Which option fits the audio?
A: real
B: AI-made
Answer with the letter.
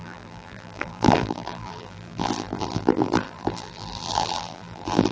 B